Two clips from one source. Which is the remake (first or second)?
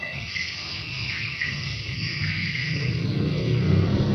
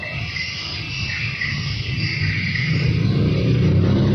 first